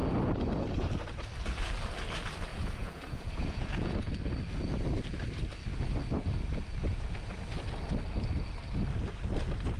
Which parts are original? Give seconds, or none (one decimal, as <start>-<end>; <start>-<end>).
0.0-2.5; 4.1-9.8